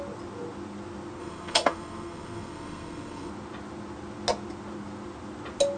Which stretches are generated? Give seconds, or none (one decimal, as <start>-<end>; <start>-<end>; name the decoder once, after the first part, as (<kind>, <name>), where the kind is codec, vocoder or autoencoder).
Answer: 1.2-3.3 (codec, SNAC)